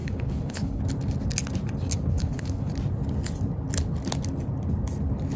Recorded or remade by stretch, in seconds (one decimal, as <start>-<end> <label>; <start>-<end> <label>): 0.0-0.8 remade; 0.8-2.1 recorded; 2.1-2.7 remade; 2.7-5.4 recorded

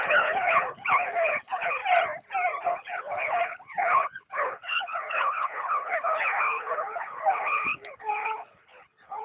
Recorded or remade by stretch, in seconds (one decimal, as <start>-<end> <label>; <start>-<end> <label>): 0.0-1.8 remade; 1.8-2.7 recorded; 2.7-9.2 remade

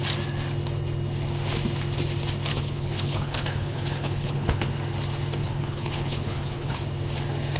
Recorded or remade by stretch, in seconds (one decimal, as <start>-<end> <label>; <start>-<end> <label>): 0.0-2.5 recorded; 2.5-4.7 remade; 4.7-5.4 recorded; 5.4-6.8 remade; 6.8-7.6 recorded

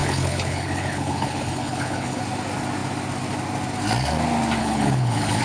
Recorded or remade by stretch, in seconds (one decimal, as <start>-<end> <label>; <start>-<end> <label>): 0.0-2.2 remade; 2.2-4.6 recorded; 4.6-5.4 remade

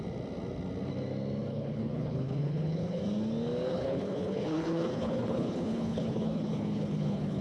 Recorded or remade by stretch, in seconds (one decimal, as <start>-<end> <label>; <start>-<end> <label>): 0.0-1.5 recorded; 1.5-3.0 remade; 3.0-3.7 recorded; 3.7-7.4 remade